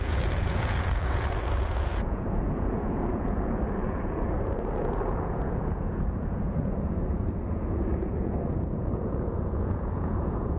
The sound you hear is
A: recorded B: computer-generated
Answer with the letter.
B